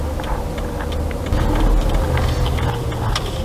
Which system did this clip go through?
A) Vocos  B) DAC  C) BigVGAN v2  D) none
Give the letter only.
D